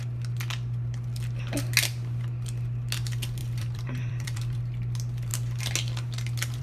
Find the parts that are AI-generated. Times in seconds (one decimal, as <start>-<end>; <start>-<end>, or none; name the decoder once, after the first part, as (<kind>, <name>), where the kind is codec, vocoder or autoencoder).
3.4-4.6 (vocoder, BigVGAN v2)